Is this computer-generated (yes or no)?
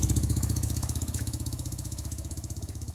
yes